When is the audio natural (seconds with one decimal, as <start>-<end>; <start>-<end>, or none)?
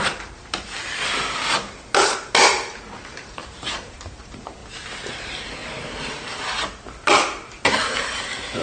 0.8-2.7; 4.6-5.1